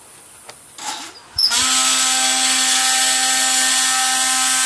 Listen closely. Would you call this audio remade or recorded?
recorded